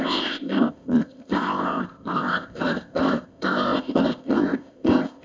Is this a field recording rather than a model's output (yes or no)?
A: no